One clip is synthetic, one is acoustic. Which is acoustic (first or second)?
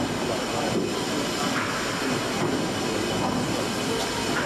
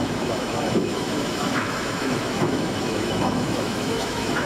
first